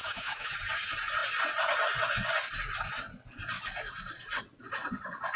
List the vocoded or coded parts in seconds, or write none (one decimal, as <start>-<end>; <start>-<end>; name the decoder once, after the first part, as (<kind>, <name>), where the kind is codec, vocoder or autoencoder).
0.0-0.5 (autoencoder, DAC-VAE)